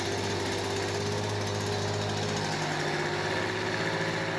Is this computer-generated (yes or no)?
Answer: no